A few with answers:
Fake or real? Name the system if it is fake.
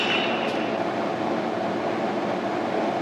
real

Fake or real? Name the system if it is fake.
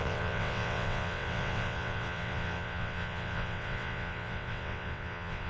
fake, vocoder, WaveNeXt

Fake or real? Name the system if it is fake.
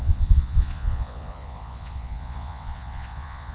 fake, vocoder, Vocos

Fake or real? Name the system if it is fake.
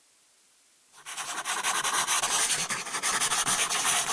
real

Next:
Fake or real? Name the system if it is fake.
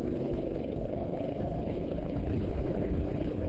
fake, codec, HILCodec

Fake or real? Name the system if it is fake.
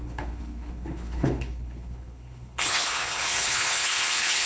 fake, codec, HILCodec